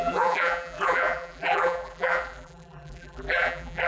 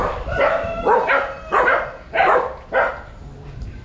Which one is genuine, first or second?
second